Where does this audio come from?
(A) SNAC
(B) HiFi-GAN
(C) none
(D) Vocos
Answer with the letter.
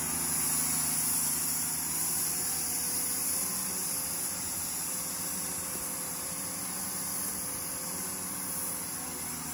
C